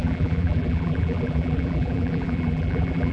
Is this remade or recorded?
remade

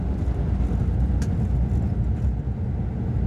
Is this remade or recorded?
recorded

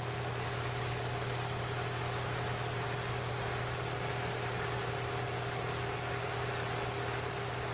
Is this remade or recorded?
recorded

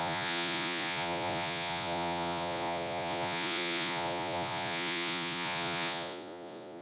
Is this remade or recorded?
remade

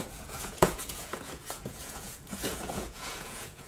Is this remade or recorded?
remade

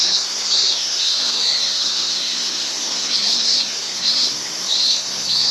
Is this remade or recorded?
remade